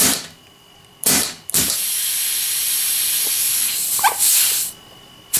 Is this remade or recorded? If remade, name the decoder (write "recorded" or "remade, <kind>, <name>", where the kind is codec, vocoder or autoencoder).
remade, vocoder, BigVGAN v2